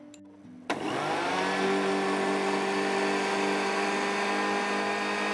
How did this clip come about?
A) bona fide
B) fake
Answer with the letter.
A